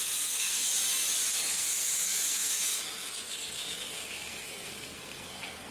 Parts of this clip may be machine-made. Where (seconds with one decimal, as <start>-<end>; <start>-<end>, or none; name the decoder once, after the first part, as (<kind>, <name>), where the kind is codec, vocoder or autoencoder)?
0.0-0.7 (codec, SNAC); 1.3-5.7